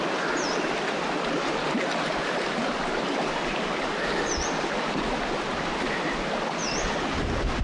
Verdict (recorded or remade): recorded